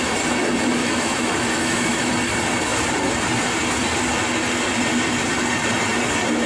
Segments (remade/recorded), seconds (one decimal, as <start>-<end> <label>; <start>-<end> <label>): 0.0-0.8 recorded; 0.8-2.1 remade; 2.1-6.5 recorded